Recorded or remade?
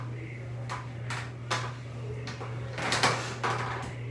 recorded